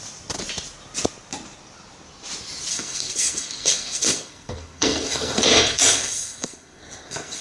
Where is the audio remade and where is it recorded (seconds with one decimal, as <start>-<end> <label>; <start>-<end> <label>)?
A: 0.0-2.7 recorded; 2.7-7.4 remade

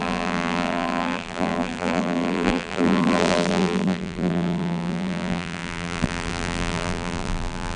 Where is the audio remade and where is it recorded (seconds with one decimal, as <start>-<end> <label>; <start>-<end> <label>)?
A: 0.0-7.8 remade

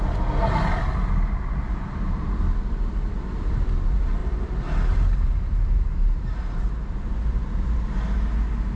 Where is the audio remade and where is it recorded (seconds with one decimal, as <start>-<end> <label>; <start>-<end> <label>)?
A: 0.0-4.2 recorded; 4.2-8.0 remade; 8.0-8.8 recorded